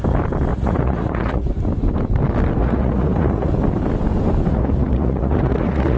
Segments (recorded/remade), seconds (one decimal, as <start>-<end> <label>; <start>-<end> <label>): 0.0-0.5 recorded; 0.5-1.5 remade; 1.5-2.6 recorded; 2.6-3.5 remade; 3.5-4.5 recorded; 4.5-6.0 remade